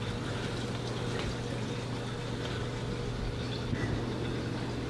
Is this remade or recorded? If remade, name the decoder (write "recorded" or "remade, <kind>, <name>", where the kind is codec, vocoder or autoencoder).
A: recorded